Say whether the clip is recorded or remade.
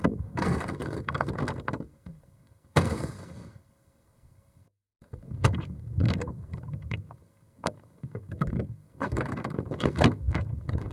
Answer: remade